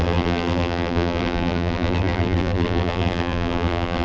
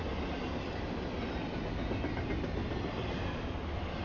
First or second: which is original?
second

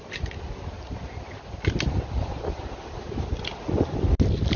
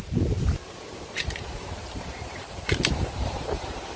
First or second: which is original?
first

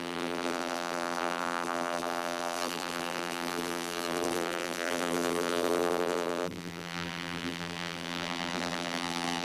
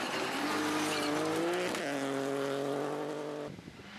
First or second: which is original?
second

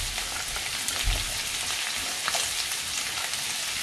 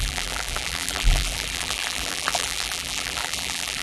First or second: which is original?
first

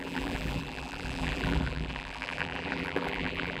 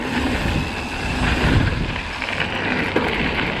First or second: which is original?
second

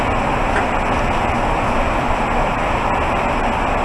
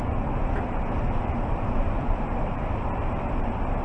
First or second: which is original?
first